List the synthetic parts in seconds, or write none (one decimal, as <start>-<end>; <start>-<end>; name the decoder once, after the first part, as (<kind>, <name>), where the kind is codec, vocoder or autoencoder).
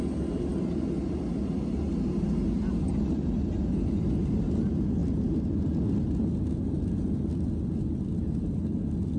none